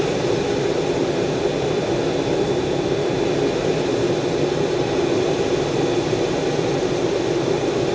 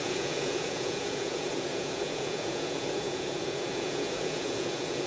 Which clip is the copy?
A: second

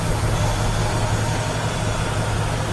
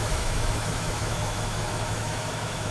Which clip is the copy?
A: second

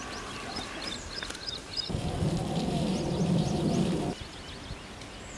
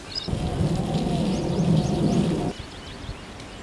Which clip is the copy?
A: first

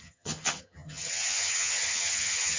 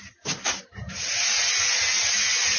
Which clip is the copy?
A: first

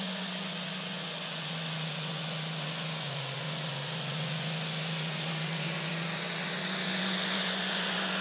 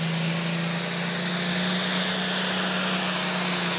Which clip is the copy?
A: first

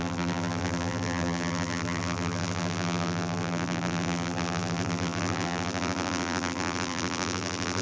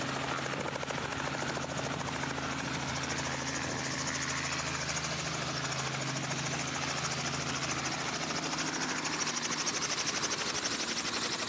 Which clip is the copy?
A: first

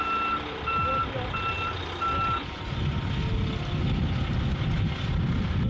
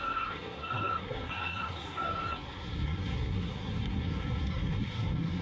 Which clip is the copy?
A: second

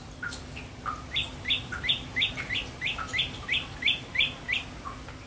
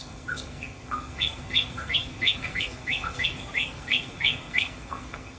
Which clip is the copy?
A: second